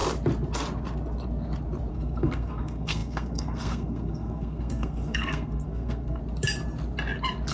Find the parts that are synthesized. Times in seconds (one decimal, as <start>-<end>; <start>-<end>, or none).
1.9-6.2

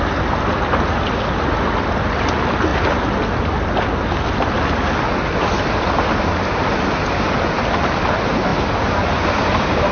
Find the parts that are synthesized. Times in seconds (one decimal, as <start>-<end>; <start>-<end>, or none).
none